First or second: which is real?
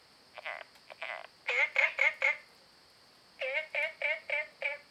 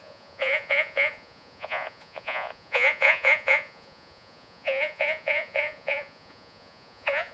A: first